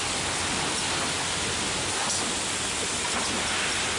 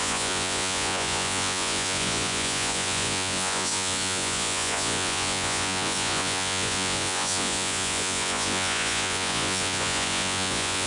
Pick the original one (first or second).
first